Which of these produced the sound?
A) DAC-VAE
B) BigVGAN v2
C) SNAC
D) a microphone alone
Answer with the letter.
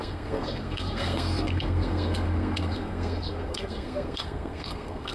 C